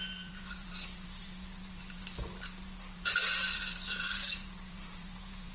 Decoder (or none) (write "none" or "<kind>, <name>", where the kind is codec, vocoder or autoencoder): vocoder, BigVGAN v2